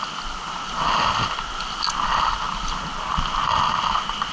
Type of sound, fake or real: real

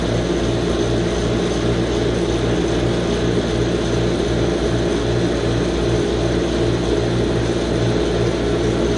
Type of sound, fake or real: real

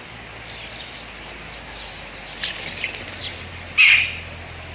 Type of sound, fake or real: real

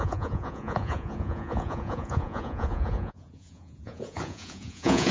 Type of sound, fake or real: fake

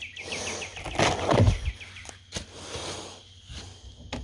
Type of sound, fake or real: real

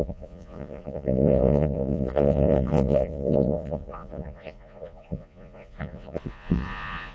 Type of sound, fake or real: fake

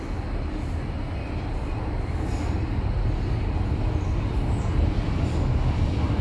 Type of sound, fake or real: real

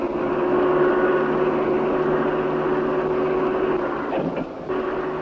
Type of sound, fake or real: real